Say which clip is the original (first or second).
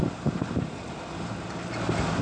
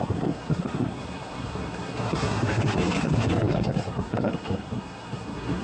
first